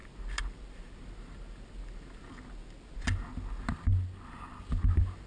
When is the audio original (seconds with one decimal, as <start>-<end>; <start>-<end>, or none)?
0.0-5.3